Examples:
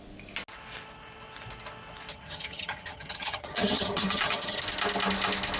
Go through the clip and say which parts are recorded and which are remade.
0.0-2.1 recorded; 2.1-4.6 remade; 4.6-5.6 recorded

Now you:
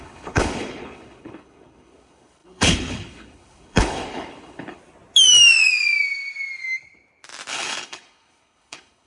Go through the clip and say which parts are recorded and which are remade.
0.0-4.8 remade; 4.8-7.5 recorded; 7.5-9.1 remade

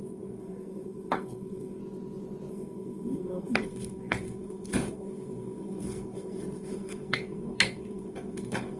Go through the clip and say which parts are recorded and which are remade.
0.0-1.8 remade; 1.8-2.5 recorded; 2.5-8.8 remade

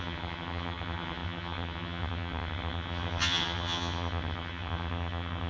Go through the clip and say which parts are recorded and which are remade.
0.0-5.5 remade